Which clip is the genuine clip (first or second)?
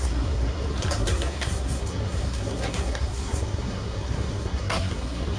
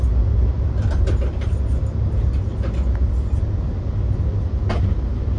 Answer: second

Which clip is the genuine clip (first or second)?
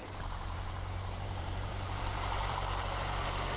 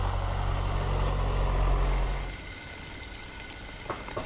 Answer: second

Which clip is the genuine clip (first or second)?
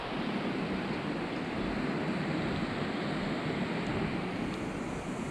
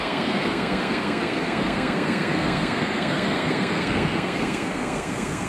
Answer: first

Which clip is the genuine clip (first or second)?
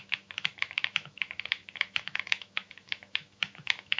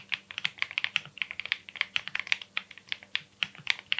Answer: second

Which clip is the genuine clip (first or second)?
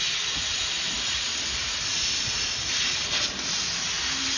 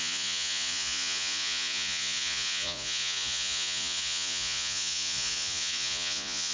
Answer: first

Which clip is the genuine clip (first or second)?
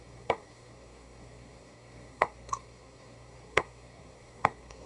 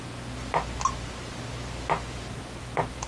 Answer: second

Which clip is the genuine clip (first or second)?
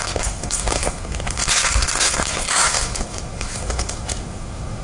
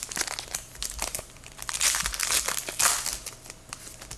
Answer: second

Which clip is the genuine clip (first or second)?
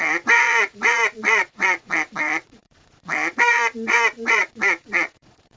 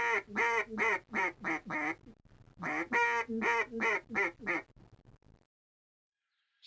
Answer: second